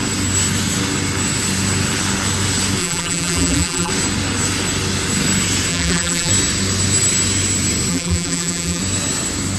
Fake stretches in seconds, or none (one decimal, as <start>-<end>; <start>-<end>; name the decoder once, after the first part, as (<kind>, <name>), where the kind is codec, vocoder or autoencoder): 2.8-3.9 (vocoder, BigVGAN v2); 5.7-6.3; 7.9-8.8